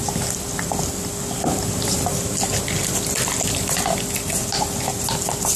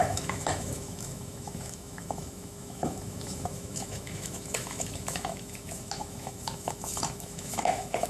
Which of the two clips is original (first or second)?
first